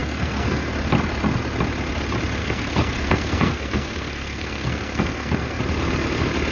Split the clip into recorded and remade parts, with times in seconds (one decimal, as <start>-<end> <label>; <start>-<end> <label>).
0.0-0.7 remade; 0.7-2.4 recorded; 2.4-5.6 remade; 5.6-6.5 recorded